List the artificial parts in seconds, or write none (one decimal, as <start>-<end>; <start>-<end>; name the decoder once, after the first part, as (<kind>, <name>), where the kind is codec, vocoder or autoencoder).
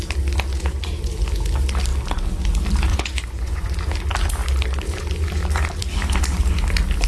2.9-3.7 (vocoder, Vocos)